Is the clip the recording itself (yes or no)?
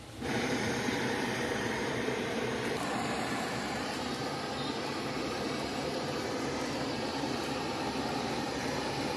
no